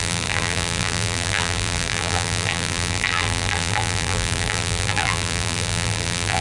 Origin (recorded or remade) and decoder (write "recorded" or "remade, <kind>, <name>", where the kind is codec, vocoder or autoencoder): remade, vocoder, BigVGAN v2